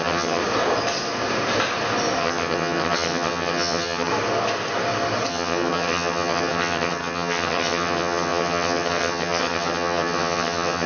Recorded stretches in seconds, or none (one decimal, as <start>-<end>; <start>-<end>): 0.4-2.2; 4.1-5.3